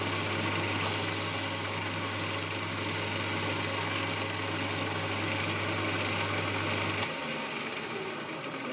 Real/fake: real